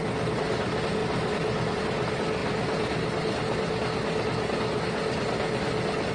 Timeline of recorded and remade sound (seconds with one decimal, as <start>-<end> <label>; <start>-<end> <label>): 0.0-6.1 recorded